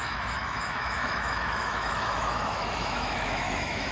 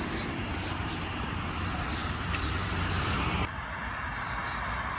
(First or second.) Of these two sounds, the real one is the second